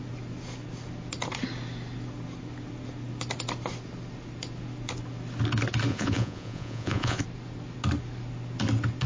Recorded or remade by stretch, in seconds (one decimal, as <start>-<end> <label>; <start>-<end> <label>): 0.0-5.9 recorded; 5.9-7.2 remade; 7.2-9.1 recorded